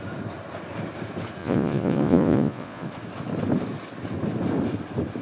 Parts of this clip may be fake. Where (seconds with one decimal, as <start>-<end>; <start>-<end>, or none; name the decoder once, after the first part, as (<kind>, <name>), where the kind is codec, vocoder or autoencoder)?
1.4-2.9 (vocoder, Vocos)